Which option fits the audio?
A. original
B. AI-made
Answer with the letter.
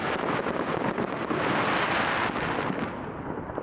A